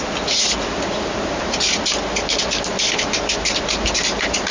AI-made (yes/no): no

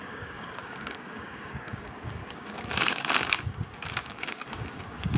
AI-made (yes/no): yes